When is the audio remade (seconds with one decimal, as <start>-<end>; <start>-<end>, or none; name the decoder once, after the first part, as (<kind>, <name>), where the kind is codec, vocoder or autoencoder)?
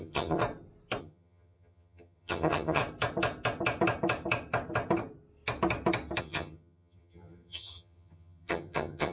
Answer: 0.0-0.4 (vocoder, HiFi-GAN); 1.0-2.8; 6.2-9.1